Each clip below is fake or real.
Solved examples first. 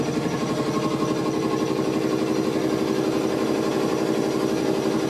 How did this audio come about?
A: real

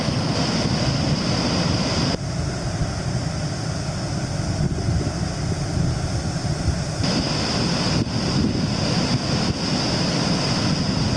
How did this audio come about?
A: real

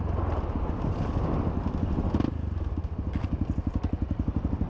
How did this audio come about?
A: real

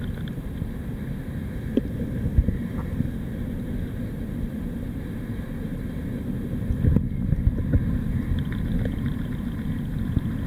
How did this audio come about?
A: real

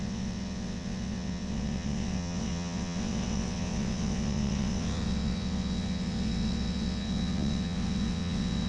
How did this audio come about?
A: fake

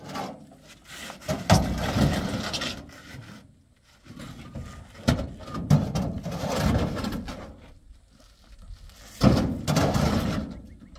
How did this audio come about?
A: real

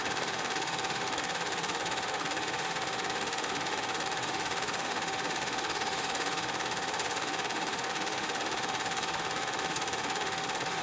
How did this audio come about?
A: fake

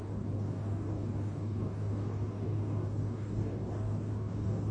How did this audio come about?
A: fake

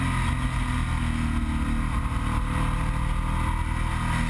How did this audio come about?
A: real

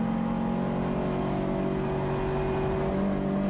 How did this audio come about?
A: real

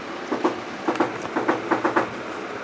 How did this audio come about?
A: real